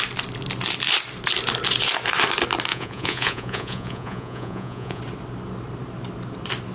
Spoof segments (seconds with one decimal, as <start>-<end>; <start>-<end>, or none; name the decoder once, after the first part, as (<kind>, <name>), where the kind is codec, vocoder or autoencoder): 2.7-5.0 (vocoder, Vocos)